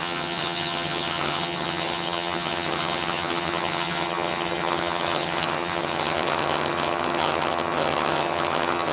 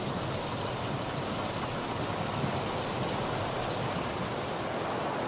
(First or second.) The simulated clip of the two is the first